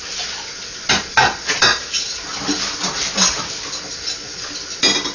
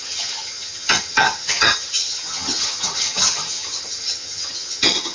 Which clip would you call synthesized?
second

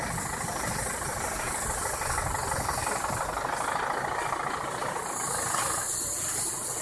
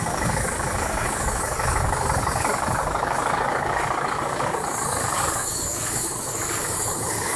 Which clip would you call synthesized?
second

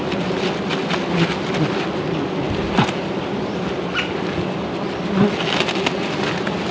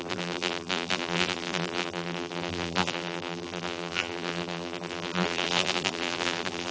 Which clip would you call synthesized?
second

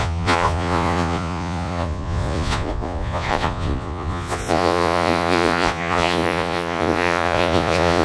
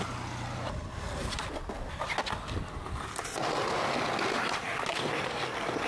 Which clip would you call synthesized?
first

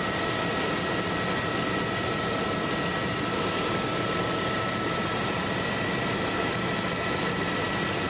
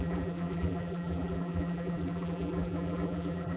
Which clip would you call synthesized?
second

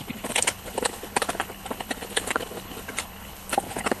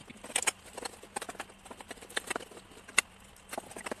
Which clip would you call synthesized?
first